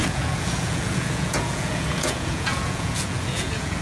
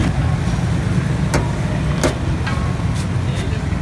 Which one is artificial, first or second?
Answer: first